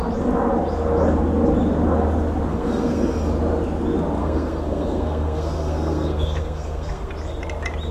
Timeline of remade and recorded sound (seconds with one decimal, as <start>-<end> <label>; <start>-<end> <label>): 0.0-2.5 recorded; 2.5-3.0 remade; 3.0-4.2 recorded; 4.2-7.1 remade; 7.1-7.9 recorded